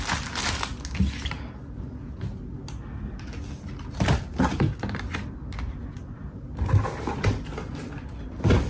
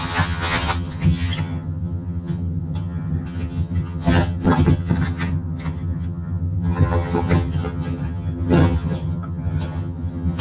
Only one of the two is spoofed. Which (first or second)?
second